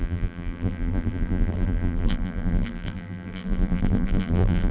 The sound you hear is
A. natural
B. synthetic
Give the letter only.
B